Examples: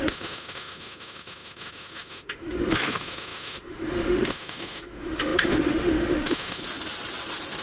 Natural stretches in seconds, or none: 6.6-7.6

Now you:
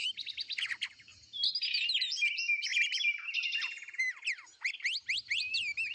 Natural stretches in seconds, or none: 0.0-5.9

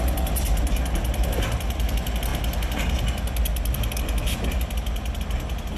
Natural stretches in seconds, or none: 0.0-5.8

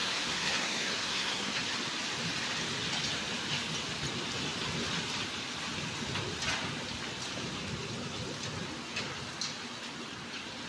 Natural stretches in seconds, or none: 1.6-10.7

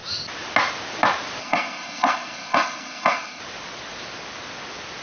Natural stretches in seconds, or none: 0.0-1.4; 3.4-5.0